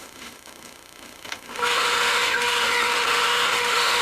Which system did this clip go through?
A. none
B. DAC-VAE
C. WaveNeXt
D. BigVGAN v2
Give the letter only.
B